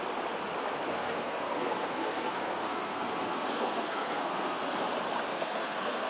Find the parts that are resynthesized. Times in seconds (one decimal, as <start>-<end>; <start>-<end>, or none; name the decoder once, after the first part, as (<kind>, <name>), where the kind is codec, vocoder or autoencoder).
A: 0.9-4.6 (codec, SNAC); 5.3-6.1